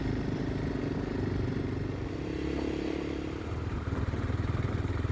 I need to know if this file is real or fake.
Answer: real